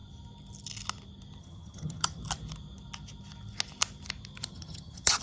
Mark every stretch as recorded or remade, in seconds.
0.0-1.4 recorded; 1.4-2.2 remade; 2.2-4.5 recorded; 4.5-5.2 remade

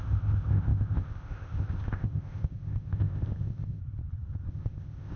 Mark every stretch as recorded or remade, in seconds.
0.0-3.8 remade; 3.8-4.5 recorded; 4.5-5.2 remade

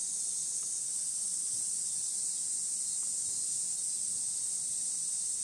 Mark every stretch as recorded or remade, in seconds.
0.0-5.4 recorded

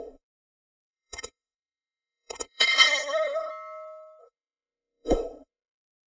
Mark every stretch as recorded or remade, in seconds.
0.0-3.5 remade; 3.5-4.2 recorded; 4.2-6.1 remade

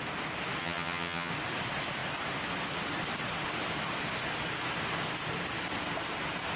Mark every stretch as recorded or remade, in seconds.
0.0-0.6 recorded; 0.6-1.3 remade; 1.3-6.6 recorded

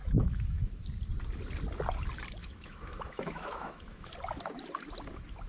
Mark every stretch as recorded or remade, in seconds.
0.0-0.7 remade; 0.7-2.4 recorded; 2.4-4.1 remade; 4.1-5.5 recorded

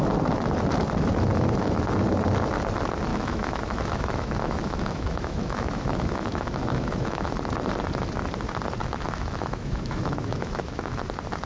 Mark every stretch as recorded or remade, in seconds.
0.0-3.1 recorded; 3.1-7.3 remade; 7.3-8.8 recorded; 8.8-11.0 remade; 11.0-11.5 recorded

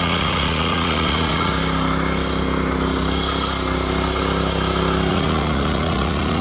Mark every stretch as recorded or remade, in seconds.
0.0-1.5 remade; 1.5-5.1 recorded; 5.1-6.4 remade